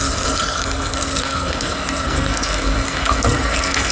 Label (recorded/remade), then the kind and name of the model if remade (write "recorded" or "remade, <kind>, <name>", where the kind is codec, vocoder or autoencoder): remade, codec, SNAC